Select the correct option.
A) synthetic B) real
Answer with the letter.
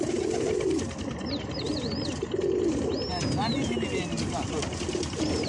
B